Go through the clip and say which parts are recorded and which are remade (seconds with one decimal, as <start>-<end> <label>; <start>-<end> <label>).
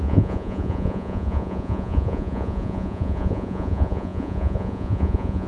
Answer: 0.0-5.5 remade